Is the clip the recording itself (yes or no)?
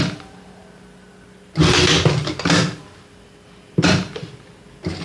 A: yes